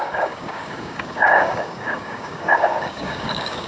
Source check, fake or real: fake